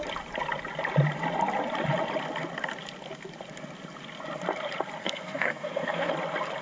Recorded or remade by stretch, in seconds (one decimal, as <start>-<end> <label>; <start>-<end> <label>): 0.0-5.0 recorded; 5.0-6.1 remade; 6.1-6.6 recorded